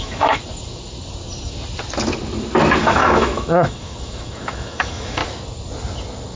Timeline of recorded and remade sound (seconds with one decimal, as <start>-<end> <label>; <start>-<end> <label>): 0.0-0.4 remade; 0.4-2.8 recorded; 2.8-5.2 remade; 5.2-6.4 recorded